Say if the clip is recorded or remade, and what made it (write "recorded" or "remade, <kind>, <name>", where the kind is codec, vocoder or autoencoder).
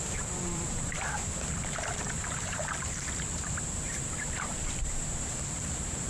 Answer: remade, vocoder, BigVGAN v2